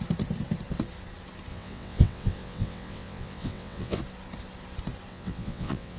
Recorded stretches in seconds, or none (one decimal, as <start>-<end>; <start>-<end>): 0.0-1.5; 4.0-5.1